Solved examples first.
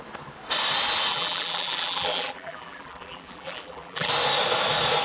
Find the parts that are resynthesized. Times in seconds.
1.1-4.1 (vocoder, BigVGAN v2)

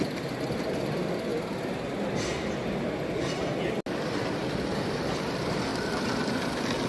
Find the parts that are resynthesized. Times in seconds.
5.7-6.3 (vocoder, BigVGAN v2)